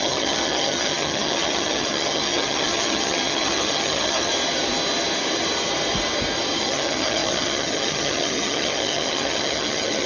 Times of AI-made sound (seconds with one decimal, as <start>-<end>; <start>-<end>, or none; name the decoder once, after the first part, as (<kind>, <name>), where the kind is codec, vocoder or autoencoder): 0.0-4.3 (vocoder, HiFi-GAN); 6.6-10.1